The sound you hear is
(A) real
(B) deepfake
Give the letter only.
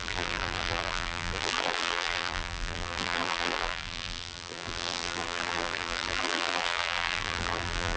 B